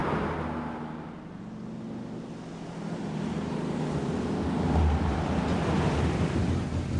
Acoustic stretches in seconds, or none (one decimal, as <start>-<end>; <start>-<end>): 0.0-7.0